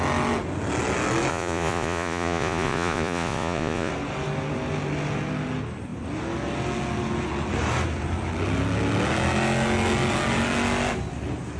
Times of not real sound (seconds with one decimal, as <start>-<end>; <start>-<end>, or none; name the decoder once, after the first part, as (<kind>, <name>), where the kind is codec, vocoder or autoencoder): 1.3-3.9 (vocoder, Vocos)